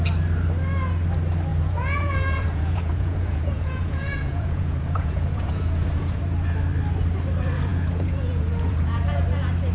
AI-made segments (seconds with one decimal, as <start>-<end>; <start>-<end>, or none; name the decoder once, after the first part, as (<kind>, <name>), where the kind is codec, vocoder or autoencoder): 1.5-6.2 (vocoder, Vocos); 7.7-9.2